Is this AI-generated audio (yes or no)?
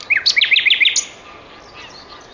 no